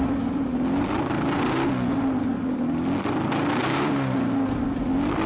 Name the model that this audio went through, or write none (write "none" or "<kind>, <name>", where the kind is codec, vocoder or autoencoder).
none